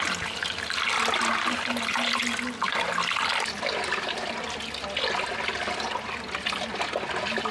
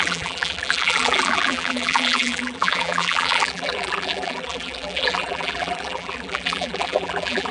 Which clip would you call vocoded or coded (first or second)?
second